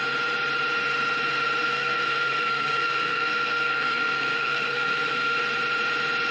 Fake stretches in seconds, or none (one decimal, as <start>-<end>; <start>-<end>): 1.6-5.4